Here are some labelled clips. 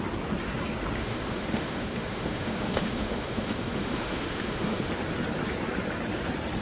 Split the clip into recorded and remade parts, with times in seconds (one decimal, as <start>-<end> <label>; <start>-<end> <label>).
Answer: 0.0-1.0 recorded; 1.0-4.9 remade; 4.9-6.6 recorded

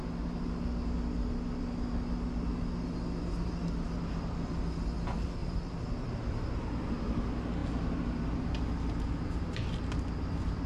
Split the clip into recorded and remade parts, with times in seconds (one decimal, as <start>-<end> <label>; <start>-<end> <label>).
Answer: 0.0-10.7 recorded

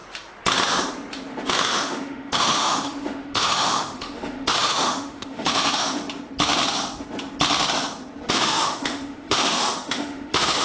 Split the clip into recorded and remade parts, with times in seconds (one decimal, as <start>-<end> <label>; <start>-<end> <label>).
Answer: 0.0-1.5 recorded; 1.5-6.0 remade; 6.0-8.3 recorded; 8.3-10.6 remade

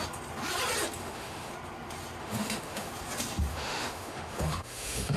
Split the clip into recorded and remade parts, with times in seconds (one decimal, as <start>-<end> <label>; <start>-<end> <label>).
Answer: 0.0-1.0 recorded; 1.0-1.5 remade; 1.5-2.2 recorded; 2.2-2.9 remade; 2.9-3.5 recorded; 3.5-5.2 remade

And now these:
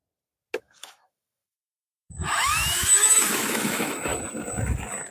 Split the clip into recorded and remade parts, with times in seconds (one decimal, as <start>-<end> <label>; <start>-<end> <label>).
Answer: 0.0-0.6 recorded; 0.6-4.1 remade; 4.1-5.1 recorded